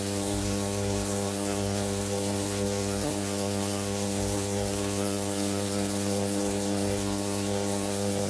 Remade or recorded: remade